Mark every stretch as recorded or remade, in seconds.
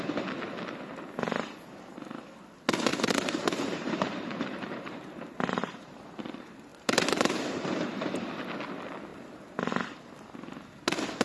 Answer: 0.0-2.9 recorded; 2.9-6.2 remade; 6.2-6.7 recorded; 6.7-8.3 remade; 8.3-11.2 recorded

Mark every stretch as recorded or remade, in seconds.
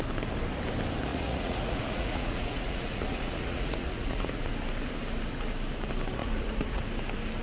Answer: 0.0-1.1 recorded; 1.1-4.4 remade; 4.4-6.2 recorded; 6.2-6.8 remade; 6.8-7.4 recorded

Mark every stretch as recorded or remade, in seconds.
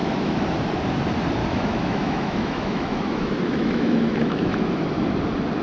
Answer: 0.0-0.5 remade; 0.5-1.4 recorded; 1.4-4.8 remade; 4.8-5.6 recorded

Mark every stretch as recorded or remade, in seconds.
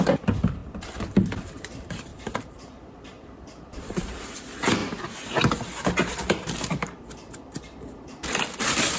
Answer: 0.0-0.6 remade; 0.6-1.5 recorded; 1.5-4.8 remade; 4.8-7.0 recorded; 7.0-9.0 remade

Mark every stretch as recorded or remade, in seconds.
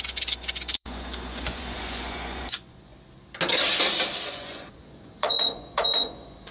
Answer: 0.0-2.9 remade; 2.9-4.3 recorded; 4.3-6.5 remade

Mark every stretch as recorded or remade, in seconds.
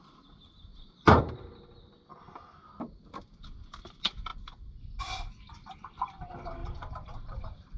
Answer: 0.0-0.7 recorded; 0.7-1.2 remade; 1.2-6.6 recorded; 6.6-7.8 remade